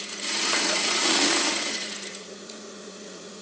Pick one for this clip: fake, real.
fake